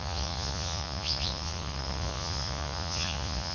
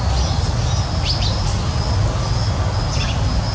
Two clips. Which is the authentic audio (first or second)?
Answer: second